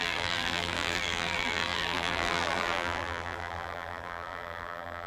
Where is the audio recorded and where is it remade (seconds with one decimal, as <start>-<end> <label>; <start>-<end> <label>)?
0.0-5.1 remade